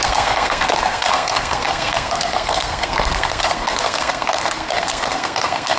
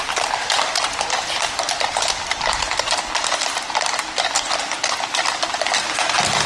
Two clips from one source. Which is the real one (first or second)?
second